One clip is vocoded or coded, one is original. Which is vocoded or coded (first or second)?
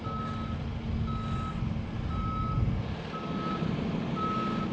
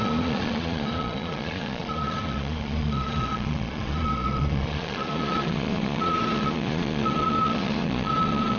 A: second